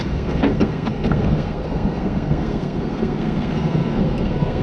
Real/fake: fake